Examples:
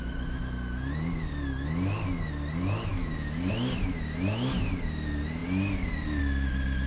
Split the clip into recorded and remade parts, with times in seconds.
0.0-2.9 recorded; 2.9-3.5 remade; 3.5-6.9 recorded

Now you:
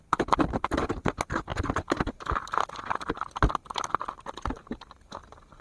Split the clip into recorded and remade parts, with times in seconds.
0.0-5.6 recorded